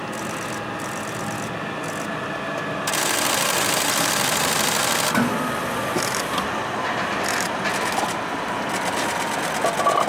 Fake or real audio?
real